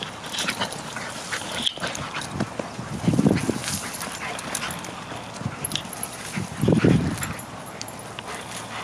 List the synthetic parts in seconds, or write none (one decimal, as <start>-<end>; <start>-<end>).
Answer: none